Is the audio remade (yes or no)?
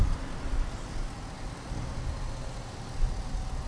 no